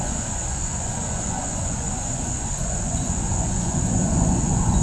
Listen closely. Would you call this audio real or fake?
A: fake